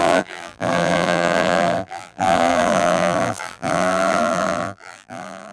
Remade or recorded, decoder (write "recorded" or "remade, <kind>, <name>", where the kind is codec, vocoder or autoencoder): remade, vocoder, BigVGAN v2